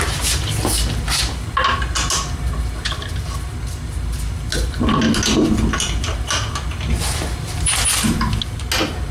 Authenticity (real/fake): real